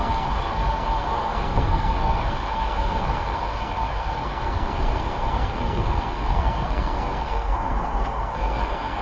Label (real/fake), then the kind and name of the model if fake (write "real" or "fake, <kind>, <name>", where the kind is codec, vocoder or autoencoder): fake, codec, SNAC